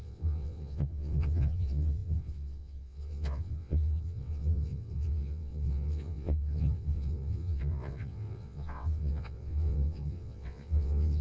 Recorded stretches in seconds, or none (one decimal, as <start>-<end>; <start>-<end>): none